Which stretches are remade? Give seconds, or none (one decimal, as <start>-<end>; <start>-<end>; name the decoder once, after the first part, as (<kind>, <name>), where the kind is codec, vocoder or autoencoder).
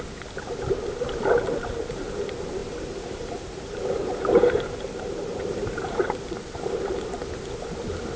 2.6-6.2 (vocoder, BigVGAN v2)